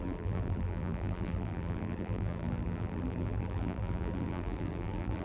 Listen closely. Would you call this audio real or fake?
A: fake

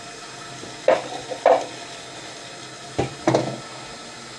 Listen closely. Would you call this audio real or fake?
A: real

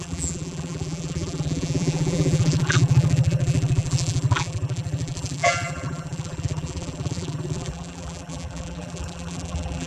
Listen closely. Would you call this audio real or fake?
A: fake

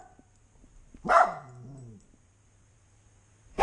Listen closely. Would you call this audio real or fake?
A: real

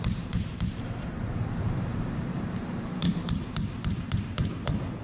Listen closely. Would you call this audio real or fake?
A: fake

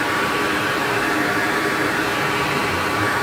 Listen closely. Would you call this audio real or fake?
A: fake